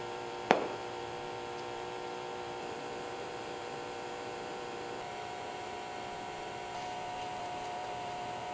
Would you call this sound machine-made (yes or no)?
yes